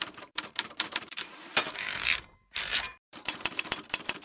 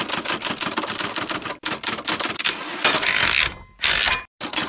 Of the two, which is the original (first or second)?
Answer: second